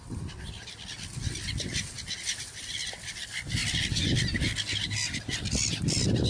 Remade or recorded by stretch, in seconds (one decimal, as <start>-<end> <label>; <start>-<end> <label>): 0.0-6.3 recorded